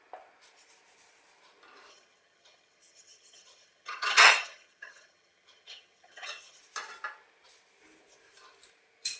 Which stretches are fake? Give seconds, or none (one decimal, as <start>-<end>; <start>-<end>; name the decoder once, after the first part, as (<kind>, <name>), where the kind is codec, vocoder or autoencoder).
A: 1.9-6.6 (vocoder, HiFi-GAN)